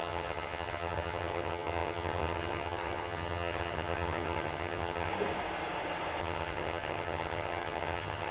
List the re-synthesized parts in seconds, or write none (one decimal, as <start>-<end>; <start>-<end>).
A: 0.0-5.1; 6.2-8.3

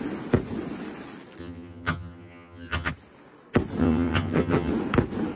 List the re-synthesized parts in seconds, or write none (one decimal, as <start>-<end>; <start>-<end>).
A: 1.4-2.9; 3.8-4.7

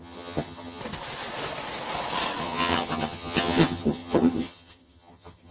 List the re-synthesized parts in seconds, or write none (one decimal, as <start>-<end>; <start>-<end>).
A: 0.0-0.8; 2.4-5.5

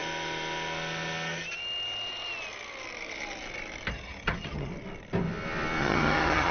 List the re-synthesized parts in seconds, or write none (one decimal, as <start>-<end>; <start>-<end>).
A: 3.9-4.7; 5.8-6.5

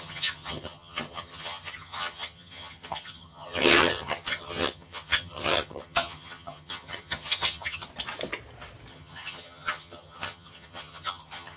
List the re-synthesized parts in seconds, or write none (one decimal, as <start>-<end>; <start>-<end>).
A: 0.0-7.9; 8.9-11.6